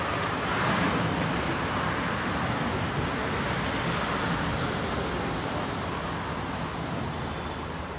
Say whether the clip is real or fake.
real